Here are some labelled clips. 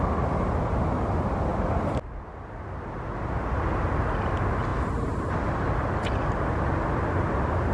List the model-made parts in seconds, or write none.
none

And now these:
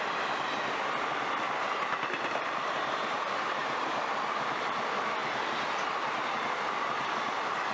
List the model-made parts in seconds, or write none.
none

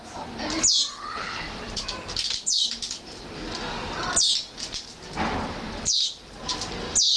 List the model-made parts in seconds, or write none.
0.9-1.4 (codec, HILCodec)